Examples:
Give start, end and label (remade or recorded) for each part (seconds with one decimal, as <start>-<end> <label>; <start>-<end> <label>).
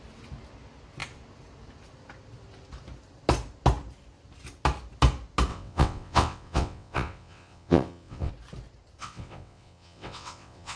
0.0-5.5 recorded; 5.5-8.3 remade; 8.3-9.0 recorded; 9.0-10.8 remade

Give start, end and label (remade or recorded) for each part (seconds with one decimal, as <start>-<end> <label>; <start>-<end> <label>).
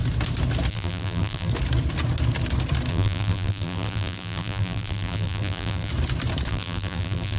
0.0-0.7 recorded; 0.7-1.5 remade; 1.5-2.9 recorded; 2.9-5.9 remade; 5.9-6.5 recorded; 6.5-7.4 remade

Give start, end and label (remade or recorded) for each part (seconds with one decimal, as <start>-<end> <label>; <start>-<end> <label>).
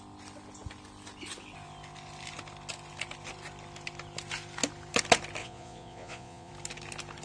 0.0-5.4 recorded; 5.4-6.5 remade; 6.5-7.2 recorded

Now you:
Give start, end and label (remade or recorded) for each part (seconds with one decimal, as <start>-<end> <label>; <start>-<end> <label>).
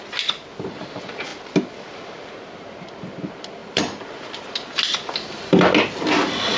0.0-6.6 recorded